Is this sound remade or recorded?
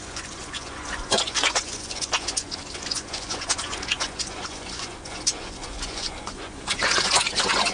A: remade